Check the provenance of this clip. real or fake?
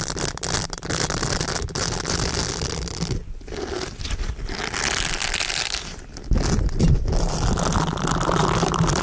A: real